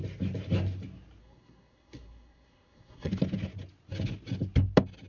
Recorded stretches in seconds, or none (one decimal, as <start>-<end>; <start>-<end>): 0.0-1.2; 3.1-5.1

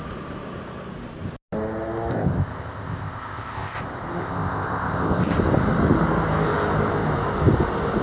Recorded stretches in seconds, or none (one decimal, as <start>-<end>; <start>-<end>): 0.0-2.1; 3.8-4.2; 5.2-8.0